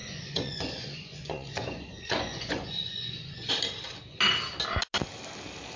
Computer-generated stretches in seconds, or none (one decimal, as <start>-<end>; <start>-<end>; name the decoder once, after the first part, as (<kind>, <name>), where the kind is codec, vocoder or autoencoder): 0.0-3.5 (vocoder, Vocos)